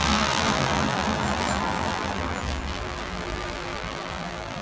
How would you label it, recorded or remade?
remade